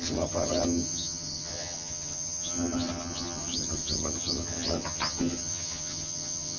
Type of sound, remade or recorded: remade